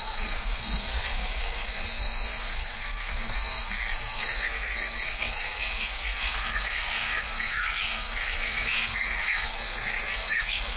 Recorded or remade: remade